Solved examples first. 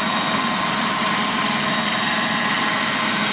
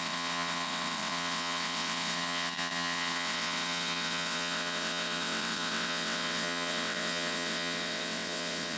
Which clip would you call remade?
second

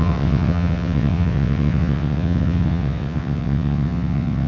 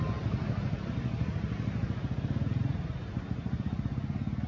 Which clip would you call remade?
first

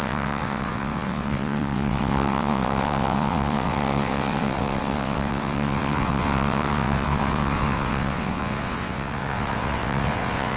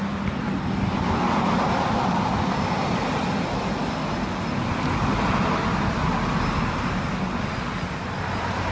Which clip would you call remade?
first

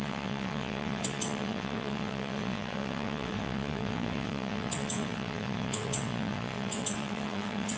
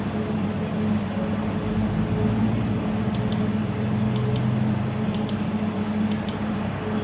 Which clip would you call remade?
first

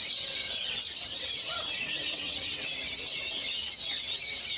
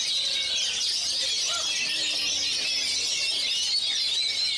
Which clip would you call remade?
first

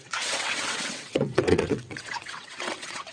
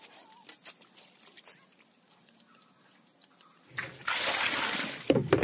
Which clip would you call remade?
first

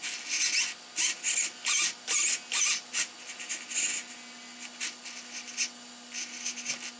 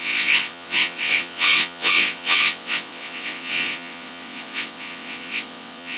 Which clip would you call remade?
second